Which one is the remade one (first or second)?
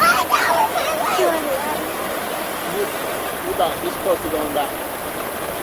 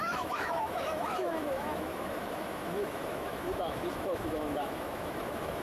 second